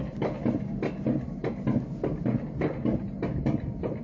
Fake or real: real